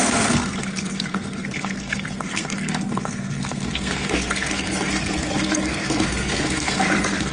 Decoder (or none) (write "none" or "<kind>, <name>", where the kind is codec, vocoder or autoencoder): codec, SNAC